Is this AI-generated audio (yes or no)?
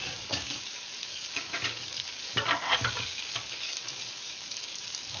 yes